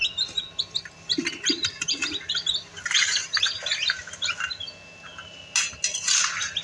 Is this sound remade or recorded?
recorded